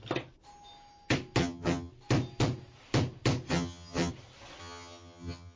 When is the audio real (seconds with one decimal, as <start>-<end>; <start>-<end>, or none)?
0.0-1.4; 1.9-3.5; 4.1-4.6